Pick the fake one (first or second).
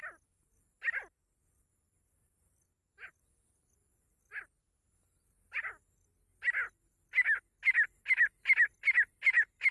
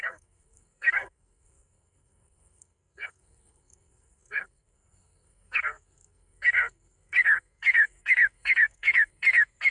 second